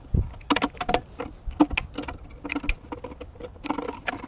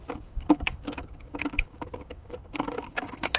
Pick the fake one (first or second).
second